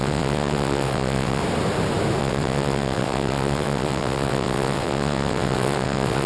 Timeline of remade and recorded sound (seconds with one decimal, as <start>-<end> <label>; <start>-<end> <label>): 0.0-1.4 remade; 1.4-2.2 recorded; 2.2-6.3 remade